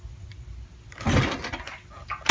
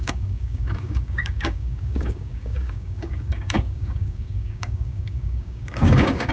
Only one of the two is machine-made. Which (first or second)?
second